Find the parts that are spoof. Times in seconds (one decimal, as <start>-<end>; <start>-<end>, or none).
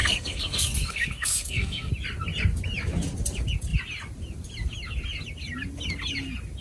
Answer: 0.0-1.9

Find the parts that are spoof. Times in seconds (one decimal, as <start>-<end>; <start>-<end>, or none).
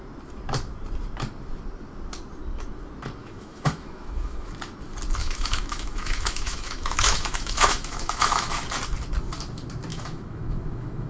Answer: 3.2-4.5; 5.2-8.5; 9.9-11.1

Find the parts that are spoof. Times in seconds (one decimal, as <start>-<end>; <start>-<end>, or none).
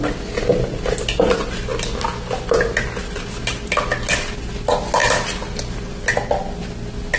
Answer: 5.0-6.0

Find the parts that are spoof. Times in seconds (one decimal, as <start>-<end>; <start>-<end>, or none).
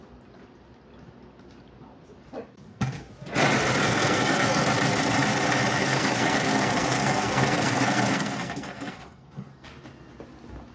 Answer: 2.5-3.1; 3.8-4.6; 5.8-9.7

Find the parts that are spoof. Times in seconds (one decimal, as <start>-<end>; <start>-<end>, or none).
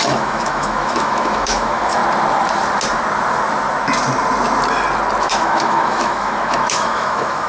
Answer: 0.0-2.0; 5.2-7.5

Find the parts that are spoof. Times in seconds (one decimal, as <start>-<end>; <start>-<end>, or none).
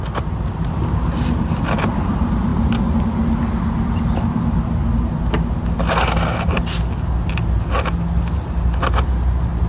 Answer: none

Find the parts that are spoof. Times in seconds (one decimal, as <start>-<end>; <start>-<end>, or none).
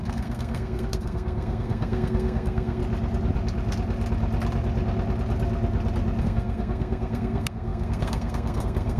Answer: 0.0-2.8; 6.2-9.0